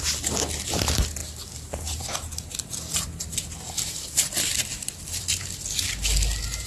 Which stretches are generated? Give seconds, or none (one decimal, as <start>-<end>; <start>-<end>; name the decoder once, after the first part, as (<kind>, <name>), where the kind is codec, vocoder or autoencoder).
none